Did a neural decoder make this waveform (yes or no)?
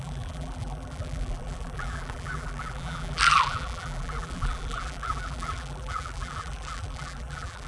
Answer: yes